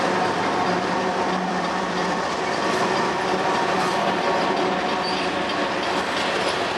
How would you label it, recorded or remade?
remade